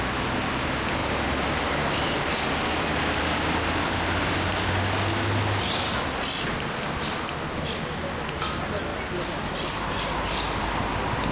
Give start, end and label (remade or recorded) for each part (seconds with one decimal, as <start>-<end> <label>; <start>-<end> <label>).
0.0-1.0 recorded; 1.0-2.3 remade; 2.3-11.3 recorded